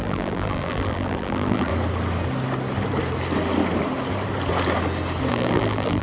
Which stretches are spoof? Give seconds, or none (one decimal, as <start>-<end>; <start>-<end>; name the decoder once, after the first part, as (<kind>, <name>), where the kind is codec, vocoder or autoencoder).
0.0-1.7 (vocoder, BigVGAN v2); 5.3-6.0